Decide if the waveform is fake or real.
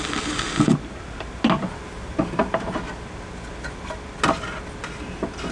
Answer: real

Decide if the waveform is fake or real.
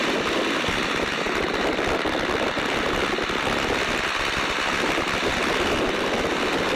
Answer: real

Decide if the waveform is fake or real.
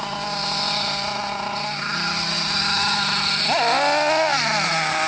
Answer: real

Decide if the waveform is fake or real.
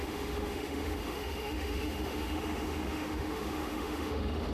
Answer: fake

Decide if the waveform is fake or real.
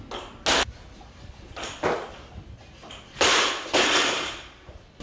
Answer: real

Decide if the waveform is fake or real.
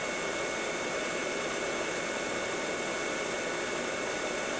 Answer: real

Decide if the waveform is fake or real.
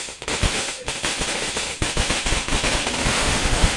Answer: fake